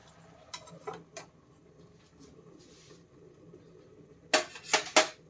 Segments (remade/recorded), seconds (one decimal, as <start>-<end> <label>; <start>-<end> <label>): 0.0-5.3 recorded